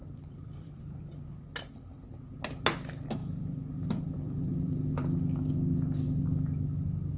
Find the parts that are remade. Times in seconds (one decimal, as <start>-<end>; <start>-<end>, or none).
0.0-1.0; 3.2-5.5